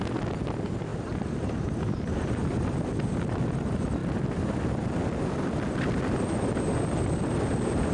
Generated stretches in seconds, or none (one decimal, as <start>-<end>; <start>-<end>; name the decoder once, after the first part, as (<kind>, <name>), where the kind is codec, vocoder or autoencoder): none